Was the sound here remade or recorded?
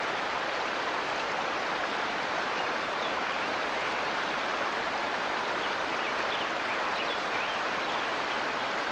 remade